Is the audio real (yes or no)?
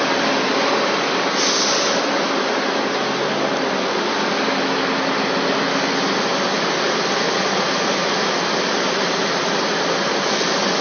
yes